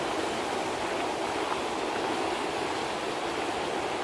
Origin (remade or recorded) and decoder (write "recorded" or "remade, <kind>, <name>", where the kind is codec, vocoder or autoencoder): recorded